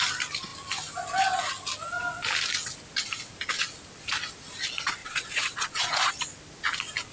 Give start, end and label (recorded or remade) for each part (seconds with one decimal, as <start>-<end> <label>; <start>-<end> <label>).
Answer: 0.0-5.0 recorded; 5.0-6.1 remade; 6.1-7.1 recorded